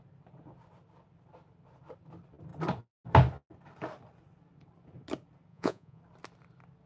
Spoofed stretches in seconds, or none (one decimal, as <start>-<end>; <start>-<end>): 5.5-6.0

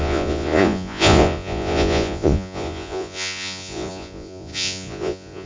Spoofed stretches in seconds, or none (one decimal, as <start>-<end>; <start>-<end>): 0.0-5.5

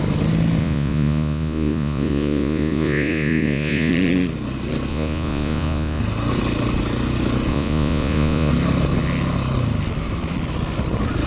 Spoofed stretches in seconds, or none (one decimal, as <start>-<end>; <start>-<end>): 0.6-3.9; 4.9-6.0; 7.5-8.5

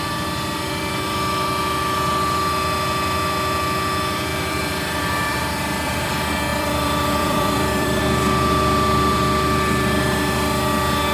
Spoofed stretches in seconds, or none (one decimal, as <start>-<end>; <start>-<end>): 4.3-6.1; 6.5-8.0

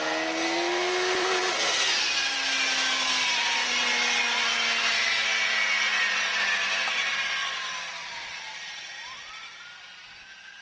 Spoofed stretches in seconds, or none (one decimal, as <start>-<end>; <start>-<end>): none

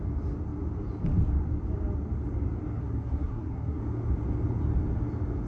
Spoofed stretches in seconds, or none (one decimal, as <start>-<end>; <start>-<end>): 2.8-3.8

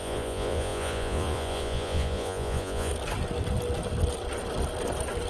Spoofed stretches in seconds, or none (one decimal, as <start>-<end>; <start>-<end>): 0.0-2.9

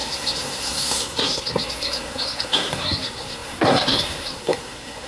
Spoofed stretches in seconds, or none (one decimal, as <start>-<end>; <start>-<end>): 0.0-5.1